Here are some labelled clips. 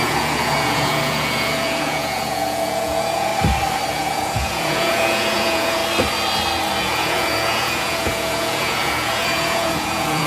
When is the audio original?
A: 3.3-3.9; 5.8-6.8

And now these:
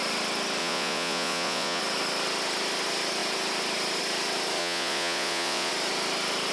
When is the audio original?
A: 0.0-0.6; 1.8-4.6; 5.7-6.5

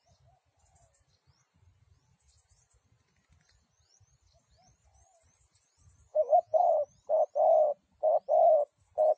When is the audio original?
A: 0.0-6.1; 6.7-9.2

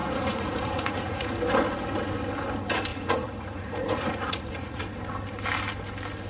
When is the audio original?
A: 1.3-2.9; 4.8-6.3

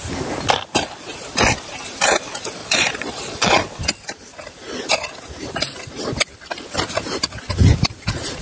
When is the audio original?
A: 0.0-2.6; 3.7-8.4